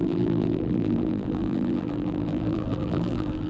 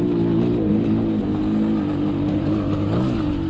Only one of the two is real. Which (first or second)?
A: second